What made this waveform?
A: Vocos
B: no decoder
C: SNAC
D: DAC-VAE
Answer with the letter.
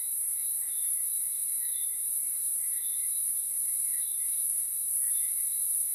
D